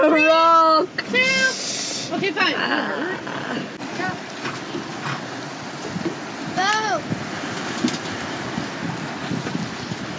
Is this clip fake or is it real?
real